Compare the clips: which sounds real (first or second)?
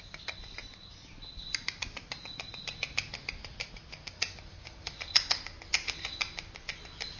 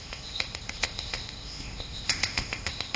first